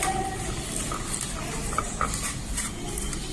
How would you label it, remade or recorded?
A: recorded